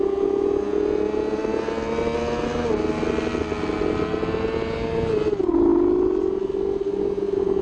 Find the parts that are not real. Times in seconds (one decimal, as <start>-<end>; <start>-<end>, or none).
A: none